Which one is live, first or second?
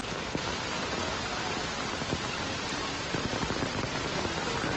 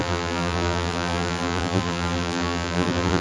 first